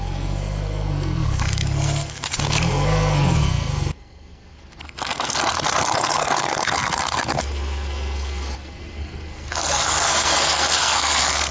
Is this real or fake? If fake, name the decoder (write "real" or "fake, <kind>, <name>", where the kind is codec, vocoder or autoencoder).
fake, codec, SNAC